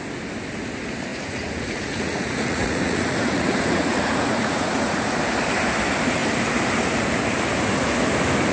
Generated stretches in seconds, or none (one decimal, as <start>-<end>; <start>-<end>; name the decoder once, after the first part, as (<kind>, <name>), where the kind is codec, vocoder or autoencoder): 1.1-5.2 (vocoder, Vocos)